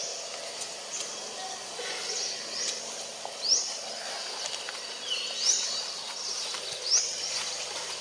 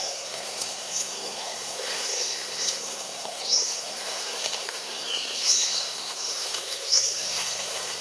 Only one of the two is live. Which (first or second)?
first